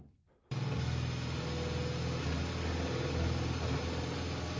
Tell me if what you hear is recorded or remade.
recorded